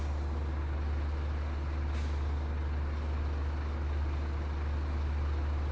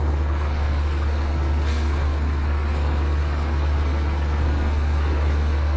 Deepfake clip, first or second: second